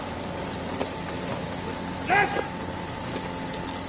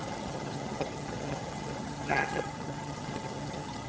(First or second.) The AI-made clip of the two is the second